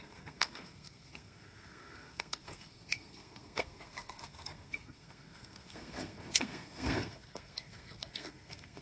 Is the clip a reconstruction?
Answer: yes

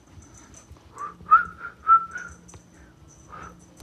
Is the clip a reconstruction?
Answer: no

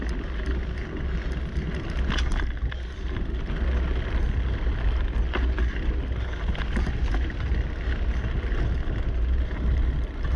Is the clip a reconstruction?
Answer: no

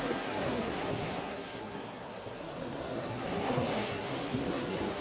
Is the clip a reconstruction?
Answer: yes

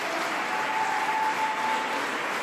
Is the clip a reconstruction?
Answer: no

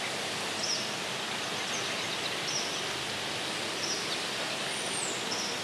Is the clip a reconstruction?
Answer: no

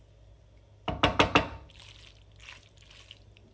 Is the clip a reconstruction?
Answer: no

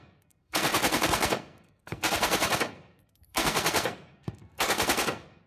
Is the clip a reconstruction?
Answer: yes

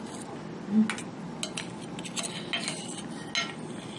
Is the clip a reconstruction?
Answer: no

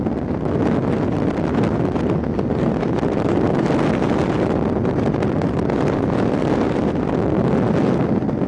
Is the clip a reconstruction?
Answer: no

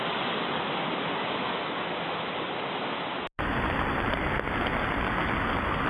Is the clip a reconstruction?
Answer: no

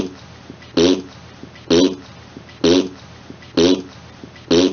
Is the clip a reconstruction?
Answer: no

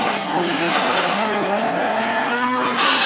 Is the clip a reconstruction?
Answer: yes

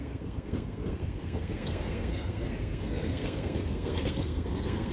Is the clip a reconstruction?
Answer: yes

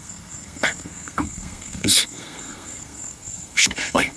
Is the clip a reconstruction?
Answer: yes